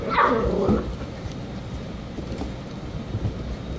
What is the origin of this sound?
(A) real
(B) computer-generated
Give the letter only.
A